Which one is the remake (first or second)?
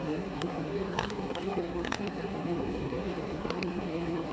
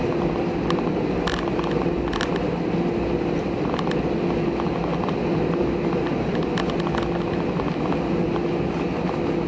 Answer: first